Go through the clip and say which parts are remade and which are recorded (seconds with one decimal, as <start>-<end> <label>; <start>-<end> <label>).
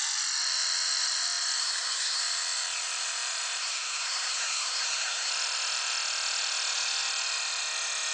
0.0-1.6 recorded; 1.6-2.2 remade; 2.2-3.6 recorded; 3.6-5.3 remade; 5.3-8.1 recorded